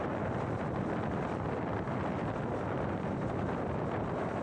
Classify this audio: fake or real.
real